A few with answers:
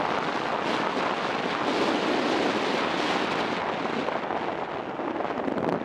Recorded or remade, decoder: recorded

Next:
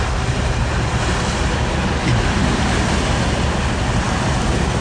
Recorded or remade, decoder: recorded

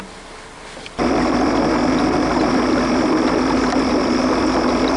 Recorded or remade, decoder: remade, vocoder, BigVGAN v2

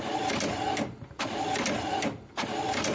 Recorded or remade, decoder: remade, vocoder, BigVGAN v2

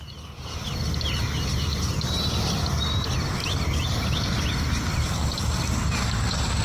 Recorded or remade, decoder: recorded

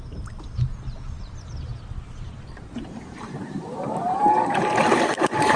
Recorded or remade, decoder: remade, vocoder, BigVGAN v2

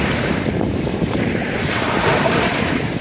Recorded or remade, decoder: remade, vocoder, BigVGAN v2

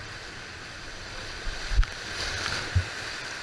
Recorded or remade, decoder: recorded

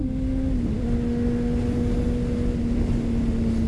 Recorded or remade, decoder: recorded